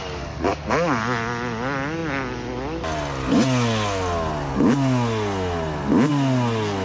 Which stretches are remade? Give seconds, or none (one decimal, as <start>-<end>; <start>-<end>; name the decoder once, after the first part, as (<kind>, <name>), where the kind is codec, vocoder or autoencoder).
none